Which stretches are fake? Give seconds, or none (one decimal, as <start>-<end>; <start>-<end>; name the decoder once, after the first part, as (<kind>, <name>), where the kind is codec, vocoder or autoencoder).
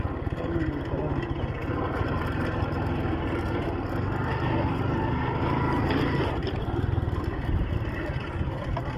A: 6.4-7.2 (vocoder, BigVGAN v2)